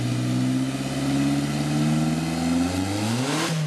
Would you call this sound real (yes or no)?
yes